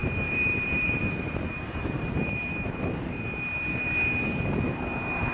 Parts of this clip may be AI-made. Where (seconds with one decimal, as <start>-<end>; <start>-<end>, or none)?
0.0-3.2

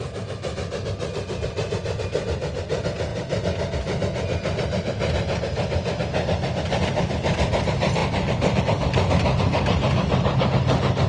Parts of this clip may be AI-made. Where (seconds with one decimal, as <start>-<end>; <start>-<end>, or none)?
8.0-8.6